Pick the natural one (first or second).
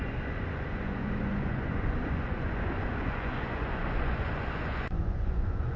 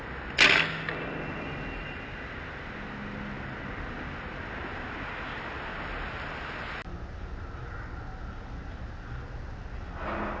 second